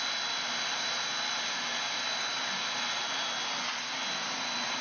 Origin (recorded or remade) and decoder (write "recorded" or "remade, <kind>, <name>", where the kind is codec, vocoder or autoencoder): recorded